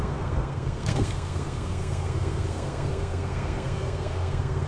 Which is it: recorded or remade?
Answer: remade